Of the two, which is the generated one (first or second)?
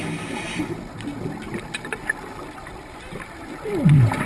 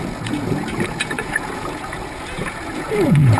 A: second